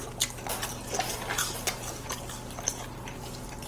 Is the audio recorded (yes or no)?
yes